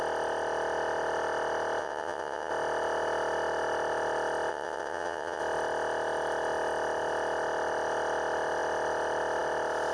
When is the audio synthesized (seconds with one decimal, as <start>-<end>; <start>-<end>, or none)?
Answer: 1.8-2.5; 4.5-5.4